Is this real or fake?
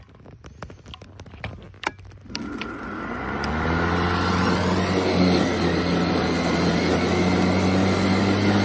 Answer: real